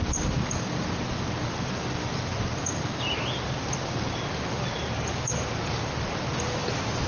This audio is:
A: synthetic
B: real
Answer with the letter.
B